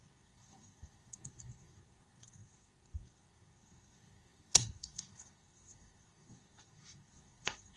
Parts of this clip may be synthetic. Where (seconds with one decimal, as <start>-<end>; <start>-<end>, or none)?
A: 0.0-7.8